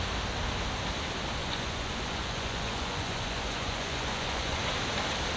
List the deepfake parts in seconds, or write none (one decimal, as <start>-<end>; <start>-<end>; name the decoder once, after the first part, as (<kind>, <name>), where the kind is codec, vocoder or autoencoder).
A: 1.4-4.6 (vocoder, Vocos)